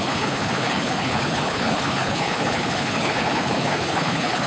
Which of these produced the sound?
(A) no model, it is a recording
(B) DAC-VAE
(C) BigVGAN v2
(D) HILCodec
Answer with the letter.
D